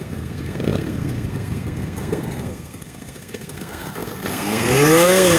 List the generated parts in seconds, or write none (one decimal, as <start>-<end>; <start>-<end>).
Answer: 0.0-5.4